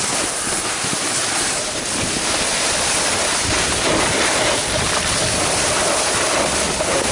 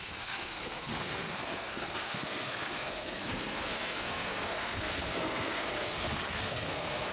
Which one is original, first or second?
first